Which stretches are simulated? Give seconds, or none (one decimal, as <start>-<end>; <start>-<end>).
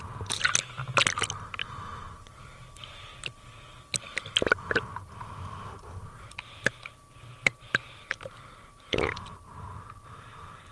none